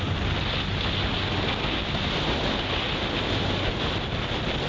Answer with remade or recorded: recorded